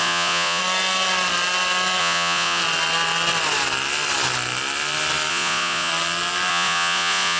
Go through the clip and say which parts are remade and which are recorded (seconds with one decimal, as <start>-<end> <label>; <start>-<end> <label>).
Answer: 0.0-0.6 remade; 0.6-2.0 recorded; 2.0-2.6 remade; 2.6-5.3 recorded; 5.3-5.9 remade; 5.9-6.5 recorded; 6.5-7.4 remade